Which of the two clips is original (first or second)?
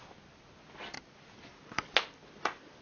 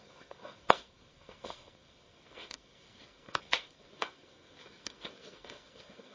first